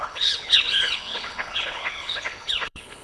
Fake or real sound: fake